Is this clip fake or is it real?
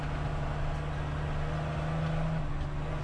real